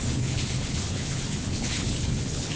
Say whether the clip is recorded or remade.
remade